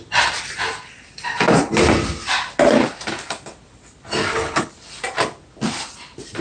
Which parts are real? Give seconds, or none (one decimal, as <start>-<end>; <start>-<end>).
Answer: 0.0-4.2; 4.7-6.4

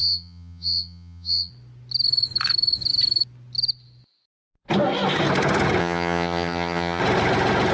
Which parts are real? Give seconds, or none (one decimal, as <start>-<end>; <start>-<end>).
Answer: 1.5-5.8; 7.0-7.7

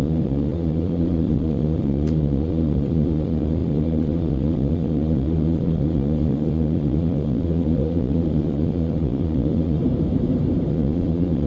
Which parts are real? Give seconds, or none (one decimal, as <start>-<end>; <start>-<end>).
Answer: 9.8-10.7

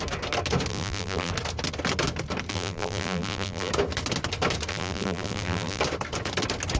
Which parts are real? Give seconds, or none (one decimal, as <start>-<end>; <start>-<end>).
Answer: 0.0-0.7; 1.3-2.5; 3.7-4.7; 5.8-6.8

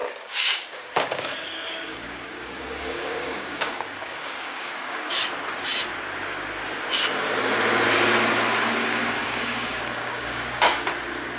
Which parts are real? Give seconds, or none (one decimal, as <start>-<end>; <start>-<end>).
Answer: 5.1-8.8; 10.9-11.4